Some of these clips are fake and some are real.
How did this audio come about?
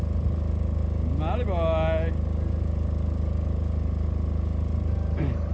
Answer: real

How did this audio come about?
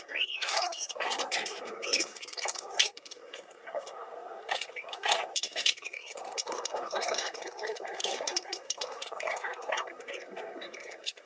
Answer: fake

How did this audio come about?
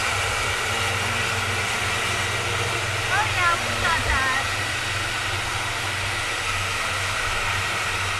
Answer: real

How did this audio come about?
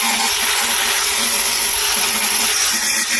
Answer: fake